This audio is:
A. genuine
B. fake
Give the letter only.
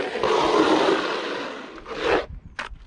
A